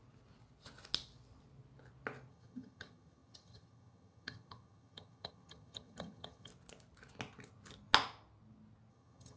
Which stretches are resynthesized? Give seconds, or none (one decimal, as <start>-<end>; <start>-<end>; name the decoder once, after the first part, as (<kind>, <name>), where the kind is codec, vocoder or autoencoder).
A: 2.3-6.5 (vocoder, HiFi-GAN); 8.9-9.4